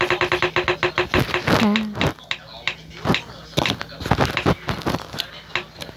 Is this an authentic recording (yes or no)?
yes